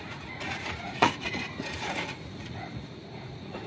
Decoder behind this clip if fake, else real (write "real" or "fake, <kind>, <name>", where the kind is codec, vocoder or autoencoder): fake, vocoder, Vocos